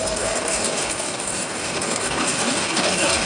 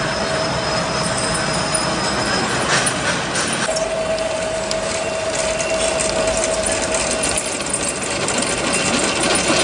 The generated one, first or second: first